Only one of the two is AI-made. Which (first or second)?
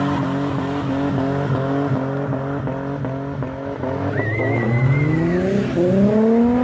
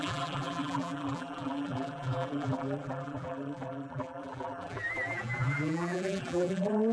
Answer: second